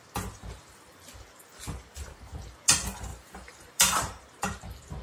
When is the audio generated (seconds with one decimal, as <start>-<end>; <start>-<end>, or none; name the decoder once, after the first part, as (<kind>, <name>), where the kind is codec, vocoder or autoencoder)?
3.1-4.6 (vocoder, BigVGAN v2)